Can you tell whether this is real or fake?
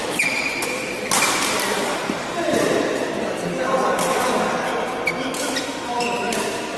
real